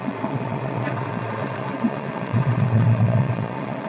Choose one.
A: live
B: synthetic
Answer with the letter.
B